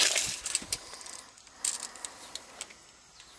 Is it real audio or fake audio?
real